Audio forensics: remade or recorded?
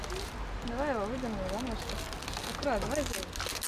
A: recorded